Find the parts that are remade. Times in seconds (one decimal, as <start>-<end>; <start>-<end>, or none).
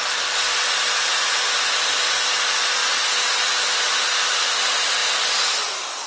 none